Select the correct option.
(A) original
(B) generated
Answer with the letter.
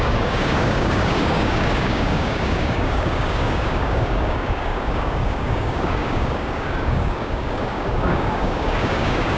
B